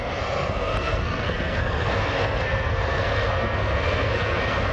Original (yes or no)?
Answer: no